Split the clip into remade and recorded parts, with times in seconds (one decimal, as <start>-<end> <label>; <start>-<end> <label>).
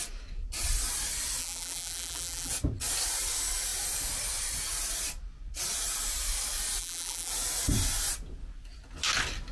0.0-1.4 recorded; 1.4-2.5 remade; 2.5-6.8 recorded; 6.8-7.3 remade; 7.3-9.5 recorded